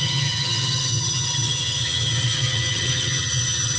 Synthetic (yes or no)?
yes